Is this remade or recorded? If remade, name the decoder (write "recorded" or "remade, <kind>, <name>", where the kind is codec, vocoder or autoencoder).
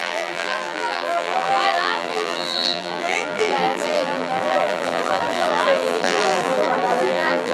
remade, vocoder, BigVGAN v2